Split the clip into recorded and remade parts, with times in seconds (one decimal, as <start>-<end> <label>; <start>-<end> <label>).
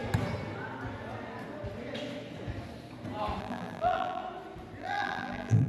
0.0-3.4 recorded; 3.4-4.2 remade; 4.2-4.8 recorded; 4.8-5.7 remade